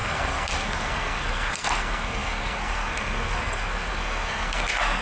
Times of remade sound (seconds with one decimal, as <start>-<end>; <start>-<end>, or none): 0.0-5.0